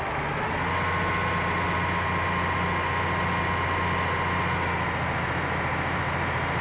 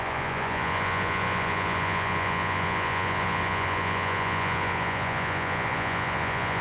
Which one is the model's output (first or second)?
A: second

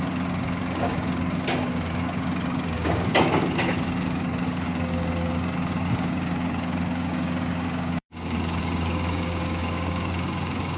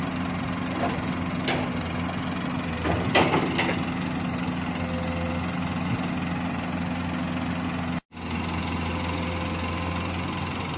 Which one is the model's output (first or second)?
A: first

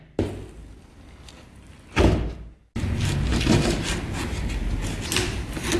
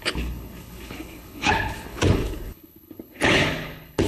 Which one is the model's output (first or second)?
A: second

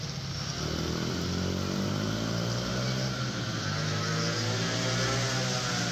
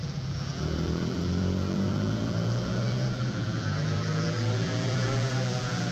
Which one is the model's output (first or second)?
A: second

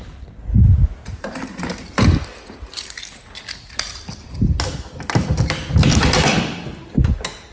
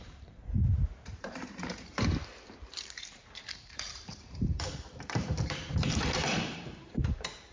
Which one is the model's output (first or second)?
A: second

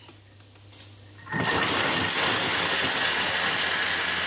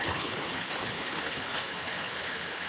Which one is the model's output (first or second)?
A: second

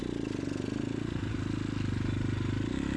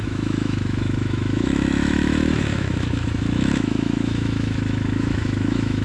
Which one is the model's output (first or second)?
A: second